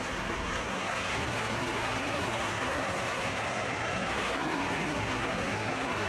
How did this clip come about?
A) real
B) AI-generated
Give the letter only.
B